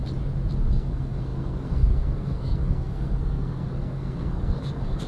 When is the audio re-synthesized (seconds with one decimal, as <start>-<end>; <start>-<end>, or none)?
0.7-5.1